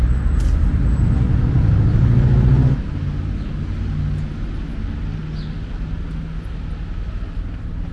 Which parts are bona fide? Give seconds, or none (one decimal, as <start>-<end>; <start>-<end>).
0.0-7.9